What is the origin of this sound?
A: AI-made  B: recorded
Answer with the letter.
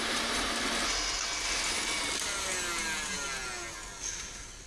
B